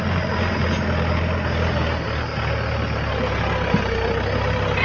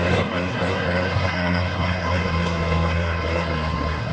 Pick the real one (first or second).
first